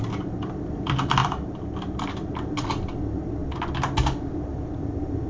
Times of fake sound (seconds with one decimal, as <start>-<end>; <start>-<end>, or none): 0.0-3.4; 4.3-5.3